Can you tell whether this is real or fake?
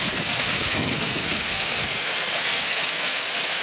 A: fake